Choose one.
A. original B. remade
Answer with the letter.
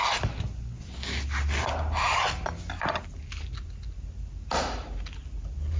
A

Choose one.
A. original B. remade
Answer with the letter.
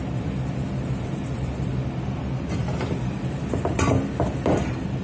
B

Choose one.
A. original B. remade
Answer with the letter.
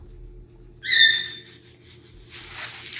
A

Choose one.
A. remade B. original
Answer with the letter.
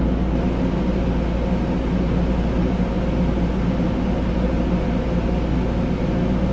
B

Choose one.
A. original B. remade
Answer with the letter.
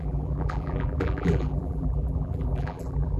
B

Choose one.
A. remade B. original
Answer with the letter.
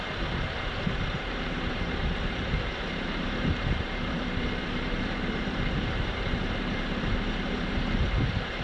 A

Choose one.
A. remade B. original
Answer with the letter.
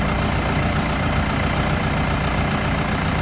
B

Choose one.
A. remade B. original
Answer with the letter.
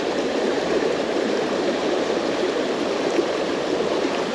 A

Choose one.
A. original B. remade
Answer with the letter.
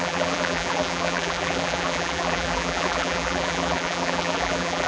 B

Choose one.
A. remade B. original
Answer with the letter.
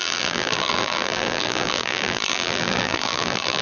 A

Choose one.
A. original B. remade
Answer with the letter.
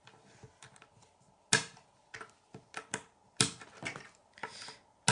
A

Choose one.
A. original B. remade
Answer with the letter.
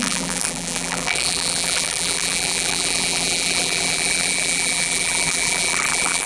B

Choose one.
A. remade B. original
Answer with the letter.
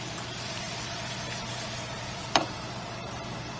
A